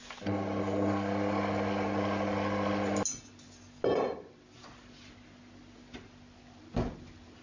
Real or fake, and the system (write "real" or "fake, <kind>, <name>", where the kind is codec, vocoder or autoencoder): real